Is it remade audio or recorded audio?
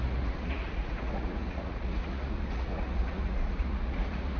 remade